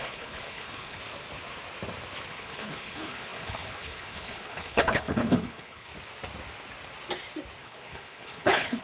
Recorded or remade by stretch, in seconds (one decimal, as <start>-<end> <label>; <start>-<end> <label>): 0.0-1.0 remade; 1.0-2.3 recorded; 2.3-5.9 remade; 5.9-7.6 recorded; 7.6-8.8 remade